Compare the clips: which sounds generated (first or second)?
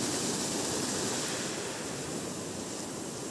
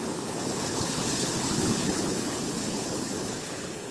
second